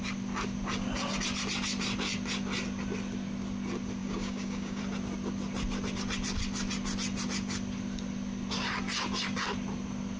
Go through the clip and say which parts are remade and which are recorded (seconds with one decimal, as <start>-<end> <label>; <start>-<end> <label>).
0.0-4.0 recorded; 4.0-4.8 remade; 4.8-10.2 recorded